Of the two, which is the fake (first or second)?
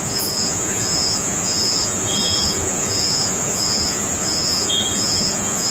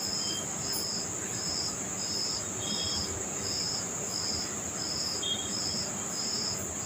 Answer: first